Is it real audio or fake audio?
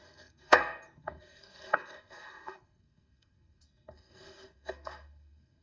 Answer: fake